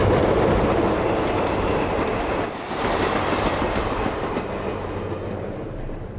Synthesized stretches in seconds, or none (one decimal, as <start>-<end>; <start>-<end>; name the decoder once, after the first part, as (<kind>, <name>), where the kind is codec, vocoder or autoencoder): 1.6-2.1 (vocoder, BigVGAN v2); 5.4-6.2